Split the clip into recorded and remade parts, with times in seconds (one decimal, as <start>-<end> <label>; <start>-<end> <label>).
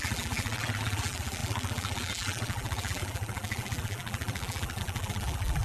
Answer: 0.0-5.6 remade